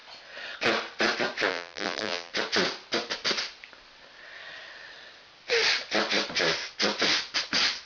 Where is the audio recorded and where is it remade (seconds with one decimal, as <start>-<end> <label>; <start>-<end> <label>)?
0.0-1.5 recorded; 1.5-2.3 remade; 2.3-7.9 recorded